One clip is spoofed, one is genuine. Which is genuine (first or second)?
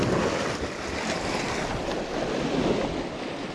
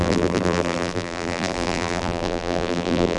first